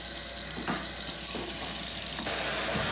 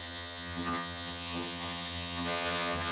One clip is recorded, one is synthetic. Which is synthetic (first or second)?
second